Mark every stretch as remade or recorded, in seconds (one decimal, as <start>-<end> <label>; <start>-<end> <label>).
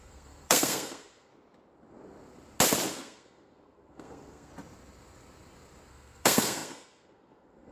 0.0-1.3 remade; 1.3-2.9 recorded; 2.9-4.5 remade; 4.5-5.9 recorded; 5.9-7.7 remade